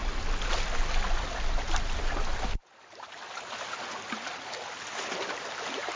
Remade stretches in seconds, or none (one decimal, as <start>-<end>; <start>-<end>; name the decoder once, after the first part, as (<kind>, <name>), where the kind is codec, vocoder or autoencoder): none